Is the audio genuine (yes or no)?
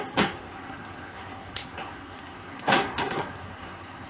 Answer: no